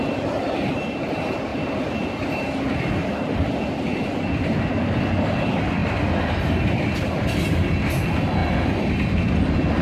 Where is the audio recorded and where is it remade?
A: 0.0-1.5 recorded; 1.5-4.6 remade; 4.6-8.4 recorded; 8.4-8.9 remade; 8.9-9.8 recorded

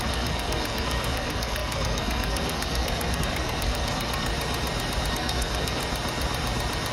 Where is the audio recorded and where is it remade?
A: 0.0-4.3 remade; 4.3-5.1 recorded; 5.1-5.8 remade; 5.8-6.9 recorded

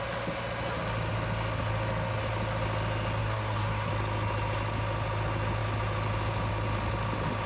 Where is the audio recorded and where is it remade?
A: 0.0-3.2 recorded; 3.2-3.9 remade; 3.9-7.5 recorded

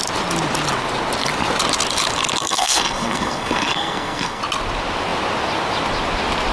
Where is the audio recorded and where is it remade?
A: 0.0-2.4 recorded; 2.4-4.4 remade; 4.4-6.5 recorded

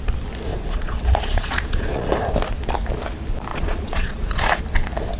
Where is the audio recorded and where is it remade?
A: 0.0-0.5 recorded; 0.5-2.1 remade; 2.1-3.5 recorded; 3.5-4.6 remade; 4.6-5.2 recorded

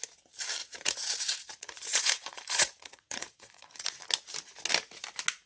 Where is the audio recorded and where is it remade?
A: 0.0-0.6 recorded; 0.6-3.9 remade; 3.9-5.5 recorded